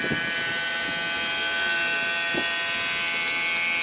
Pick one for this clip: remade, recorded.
recorded